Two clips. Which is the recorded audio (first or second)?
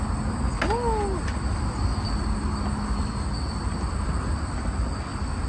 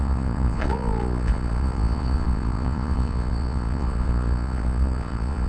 first